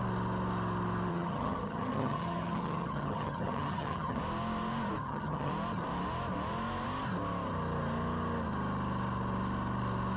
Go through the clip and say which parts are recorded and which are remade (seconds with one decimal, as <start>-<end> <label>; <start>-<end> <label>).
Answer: 0.0-1.1 recorded; 1.1-4.2 remade; 4.2-5.0 recorded; 5.0-5.5 remade; 5.5-10.2 recorded